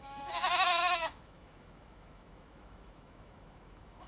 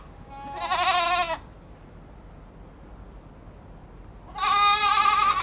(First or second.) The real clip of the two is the second